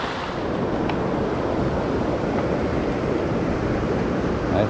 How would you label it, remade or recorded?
recorded